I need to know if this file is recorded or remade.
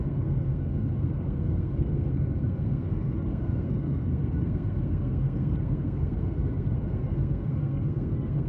remade